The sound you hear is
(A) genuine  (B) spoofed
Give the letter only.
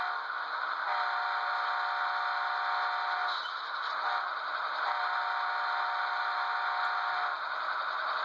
A